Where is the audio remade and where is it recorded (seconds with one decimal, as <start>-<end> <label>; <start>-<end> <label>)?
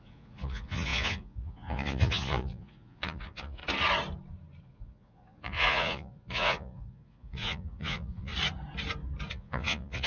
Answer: 0.0-3.6 remade; 3.6-4.6 recorded; 4.6-8.3 remade; 8.3-9.3 recorded; 9.3-10.1 remade